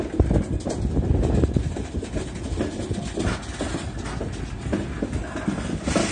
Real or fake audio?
real